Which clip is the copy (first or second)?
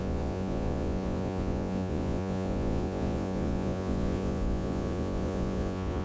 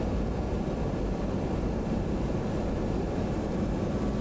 first